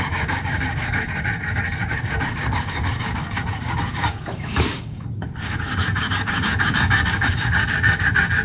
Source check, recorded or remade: remade